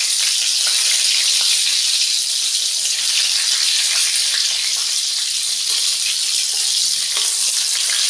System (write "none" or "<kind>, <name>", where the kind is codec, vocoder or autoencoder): none